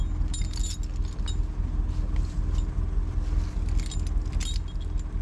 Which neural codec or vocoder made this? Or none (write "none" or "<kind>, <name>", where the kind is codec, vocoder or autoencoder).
none